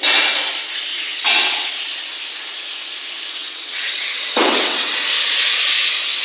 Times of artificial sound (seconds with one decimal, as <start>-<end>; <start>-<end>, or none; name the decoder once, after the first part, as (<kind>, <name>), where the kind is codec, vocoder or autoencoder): 0.9-1.7 (vocoder, WaveNeXt); 3.4-4.9